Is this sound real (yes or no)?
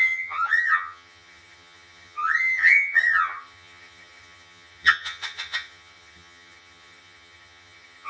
no